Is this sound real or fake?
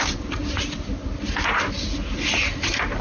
real